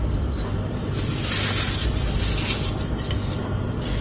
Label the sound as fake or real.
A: real